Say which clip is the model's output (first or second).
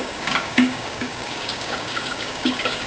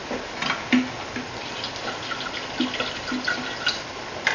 first